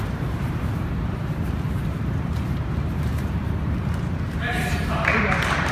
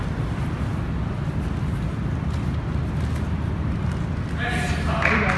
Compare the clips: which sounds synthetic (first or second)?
first